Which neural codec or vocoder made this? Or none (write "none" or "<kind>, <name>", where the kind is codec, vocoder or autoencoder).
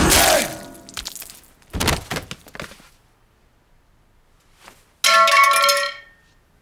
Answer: none